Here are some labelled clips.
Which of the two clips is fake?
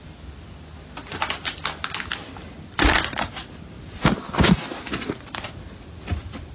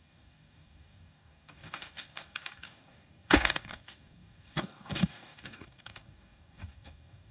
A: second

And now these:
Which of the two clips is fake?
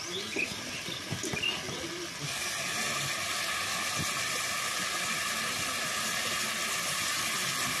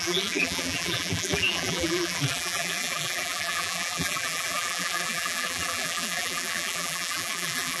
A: second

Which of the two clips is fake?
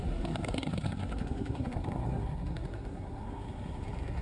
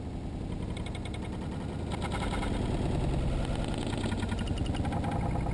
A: first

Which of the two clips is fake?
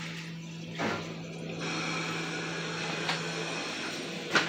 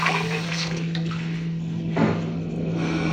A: second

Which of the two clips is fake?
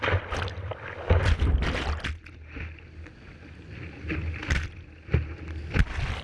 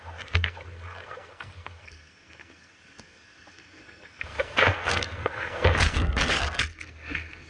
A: second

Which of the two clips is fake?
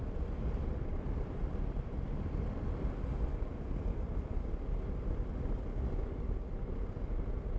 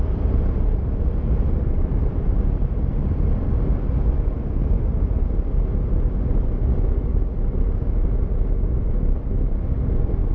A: first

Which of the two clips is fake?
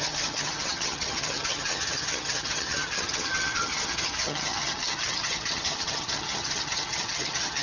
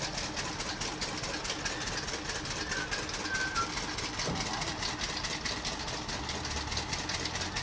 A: first